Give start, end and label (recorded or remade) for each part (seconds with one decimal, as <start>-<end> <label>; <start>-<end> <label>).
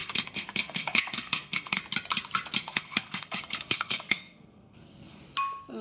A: 0.0-1.8 remade; 1.8-2.6 recorded; 2.6-5.2 remade; 5.2-5.8 recorded